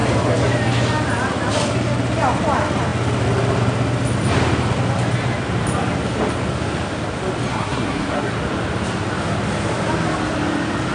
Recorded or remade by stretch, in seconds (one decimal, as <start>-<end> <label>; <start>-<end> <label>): 0.0-7.5 recorded; 7.5-8.3 remade; 8.3-10.9 recorded